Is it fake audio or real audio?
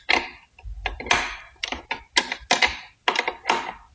real